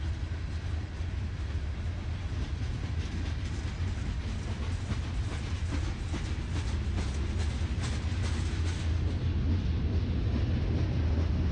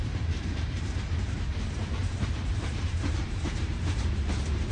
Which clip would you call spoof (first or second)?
second